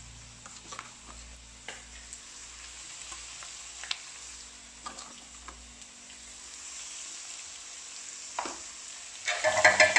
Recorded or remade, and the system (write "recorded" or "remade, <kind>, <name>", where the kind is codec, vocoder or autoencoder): recorded